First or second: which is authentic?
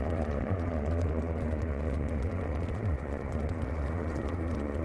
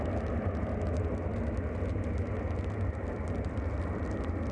second